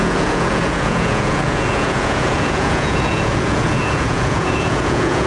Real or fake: fake